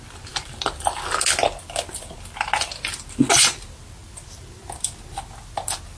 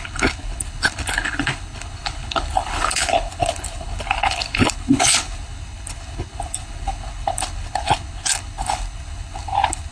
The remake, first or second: second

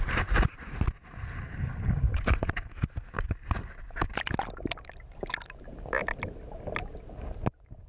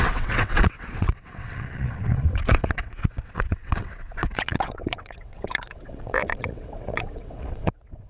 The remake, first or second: second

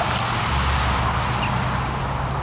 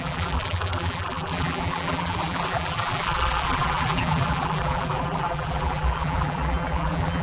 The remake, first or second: second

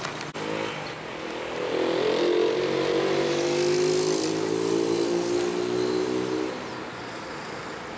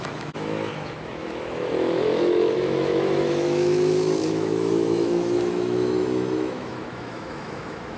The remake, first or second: second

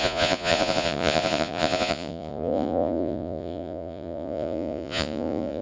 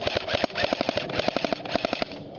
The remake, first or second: first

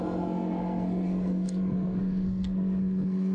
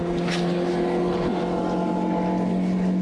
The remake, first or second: first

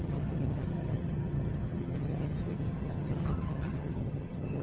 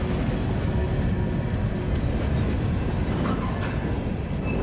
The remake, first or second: first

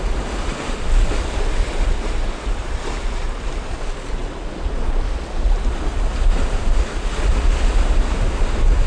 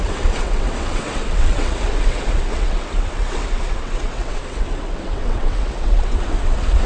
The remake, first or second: second